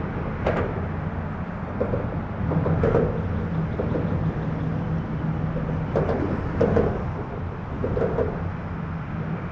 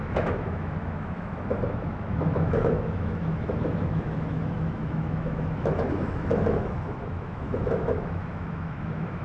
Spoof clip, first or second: second